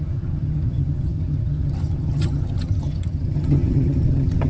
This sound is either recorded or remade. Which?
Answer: remade